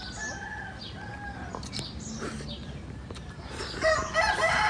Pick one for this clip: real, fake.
real